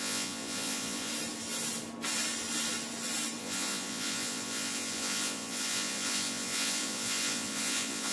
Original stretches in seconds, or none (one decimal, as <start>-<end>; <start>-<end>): 1.1-3.4